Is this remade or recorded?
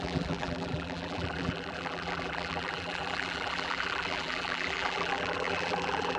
remade